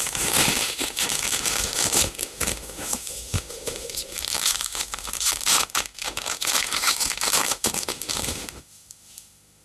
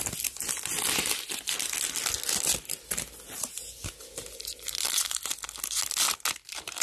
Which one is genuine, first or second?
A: second